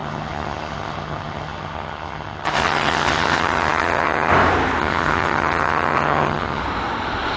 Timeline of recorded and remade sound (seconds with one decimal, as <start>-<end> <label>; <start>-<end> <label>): 0.0-4.3 remade; 4.3-4.8 recorded; 4.8-6.6 remade; 6.6-7.4 recorded